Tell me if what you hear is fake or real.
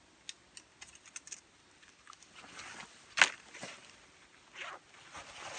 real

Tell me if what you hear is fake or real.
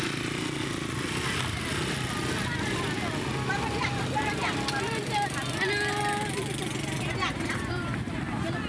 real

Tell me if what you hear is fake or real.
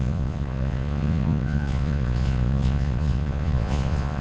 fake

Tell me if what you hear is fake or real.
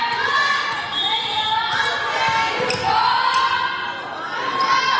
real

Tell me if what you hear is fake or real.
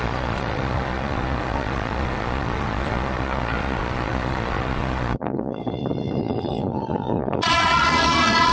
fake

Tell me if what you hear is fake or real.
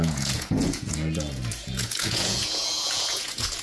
fake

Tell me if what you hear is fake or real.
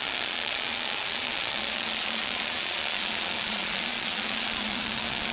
fake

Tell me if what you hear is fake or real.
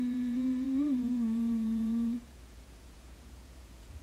fake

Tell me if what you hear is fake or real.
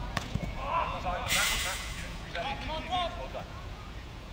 fake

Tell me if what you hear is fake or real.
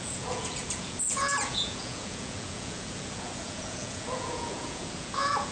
fake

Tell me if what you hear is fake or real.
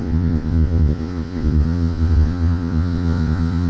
fake